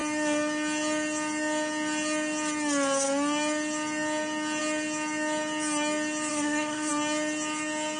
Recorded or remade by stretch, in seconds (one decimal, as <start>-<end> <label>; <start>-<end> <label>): 0.0-6.3 recorded; 6.3-6.9 remade; 6.9-8.0 recorded